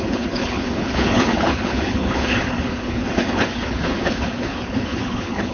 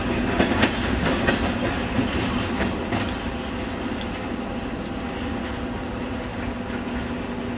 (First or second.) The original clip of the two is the second